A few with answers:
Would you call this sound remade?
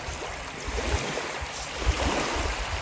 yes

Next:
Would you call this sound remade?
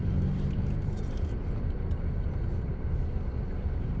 yes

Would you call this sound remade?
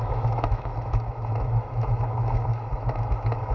yes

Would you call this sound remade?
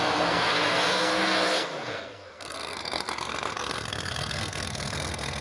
yes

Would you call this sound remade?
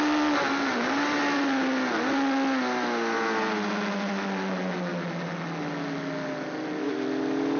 no